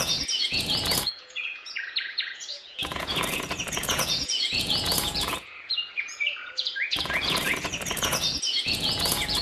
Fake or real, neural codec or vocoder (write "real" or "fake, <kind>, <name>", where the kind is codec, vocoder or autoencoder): fake, vocoder, Vocos